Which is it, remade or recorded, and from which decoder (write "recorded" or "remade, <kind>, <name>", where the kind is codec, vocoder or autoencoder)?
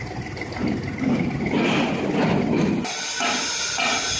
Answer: recorded